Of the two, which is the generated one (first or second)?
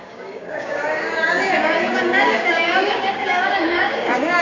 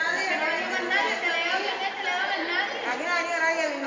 first